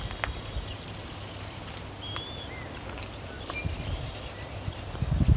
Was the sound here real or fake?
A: real